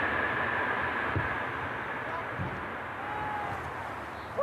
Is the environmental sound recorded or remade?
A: recorded